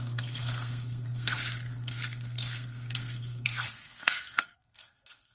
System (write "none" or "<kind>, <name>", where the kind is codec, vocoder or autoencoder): codec, SNAC